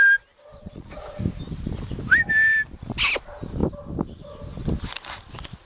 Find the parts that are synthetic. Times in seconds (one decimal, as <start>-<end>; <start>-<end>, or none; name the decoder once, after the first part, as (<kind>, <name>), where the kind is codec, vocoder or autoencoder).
0.5-1.2 (vocoder, Vocos)